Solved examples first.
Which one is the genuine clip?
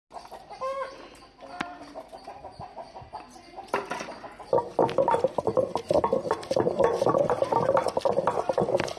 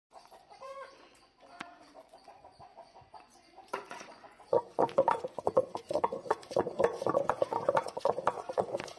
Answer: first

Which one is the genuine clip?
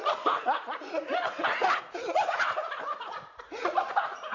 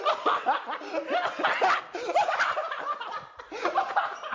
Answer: second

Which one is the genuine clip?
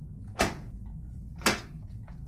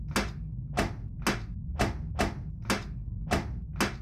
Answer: second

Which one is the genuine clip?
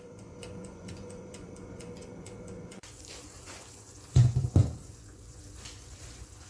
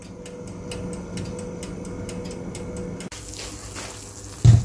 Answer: second